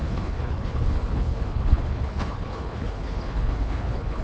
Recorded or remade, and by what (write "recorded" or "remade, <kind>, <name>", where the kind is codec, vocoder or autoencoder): remade, codec, HILCodec